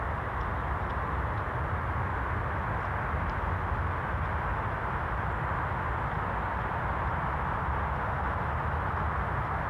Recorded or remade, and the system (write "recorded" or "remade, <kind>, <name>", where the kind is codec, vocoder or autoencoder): recorded